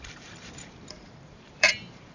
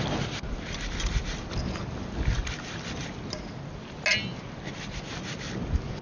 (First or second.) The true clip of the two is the second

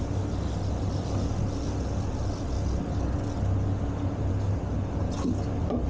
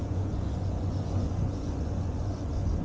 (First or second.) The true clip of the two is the first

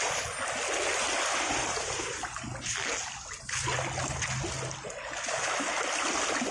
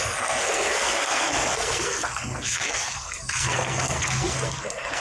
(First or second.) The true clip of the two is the first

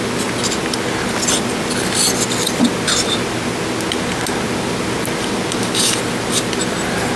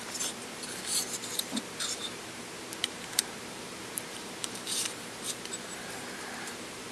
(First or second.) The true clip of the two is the first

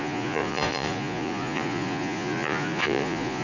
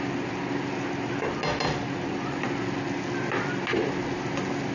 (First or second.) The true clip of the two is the second